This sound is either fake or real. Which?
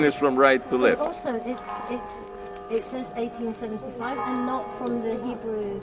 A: real